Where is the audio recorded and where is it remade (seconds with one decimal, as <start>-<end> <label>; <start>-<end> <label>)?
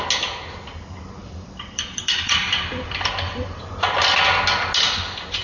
0.0-1.2 recorded; 1.2-3.6 remade; 3.6-5.4 recorded